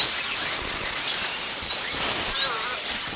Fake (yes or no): no